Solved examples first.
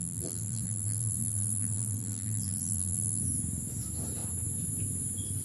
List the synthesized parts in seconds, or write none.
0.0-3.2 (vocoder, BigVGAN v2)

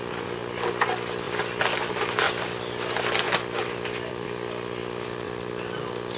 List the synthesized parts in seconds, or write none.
none